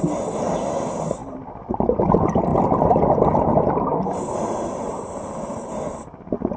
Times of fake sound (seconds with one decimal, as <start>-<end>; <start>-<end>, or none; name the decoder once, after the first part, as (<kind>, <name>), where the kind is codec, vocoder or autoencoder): none